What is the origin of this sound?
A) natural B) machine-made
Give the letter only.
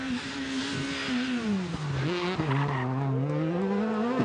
A